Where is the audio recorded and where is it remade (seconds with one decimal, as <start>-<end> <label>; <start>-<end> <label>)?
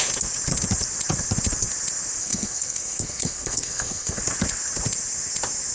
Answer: 0.0-2.2 recorded; 2.2-4.2 remade; 4.2-5.7 recorded